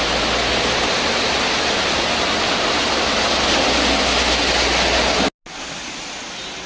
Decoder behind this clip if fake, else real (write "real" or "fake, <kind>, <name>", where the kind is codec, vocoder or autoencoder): real